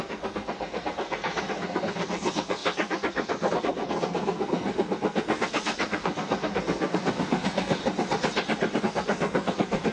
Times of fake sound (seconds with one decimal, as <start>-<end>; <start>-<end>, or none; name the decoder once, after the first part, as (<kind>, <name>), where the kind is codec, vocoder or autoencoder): 0.0-7.8 (codec, SNAC); 8.8-9.9